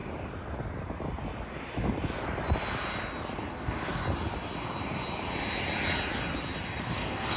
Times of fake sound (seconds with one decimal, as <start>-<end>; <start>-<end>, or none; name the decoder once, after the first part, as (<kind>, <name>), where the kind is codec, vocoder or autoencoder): 3.5-4.0 (codec, SNAC); 6.8-7.4